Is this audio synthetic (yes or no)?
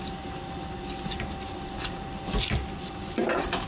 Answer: no